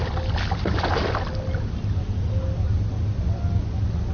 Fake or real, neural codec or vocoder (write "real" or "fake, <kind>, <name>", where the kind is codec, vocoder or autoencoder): real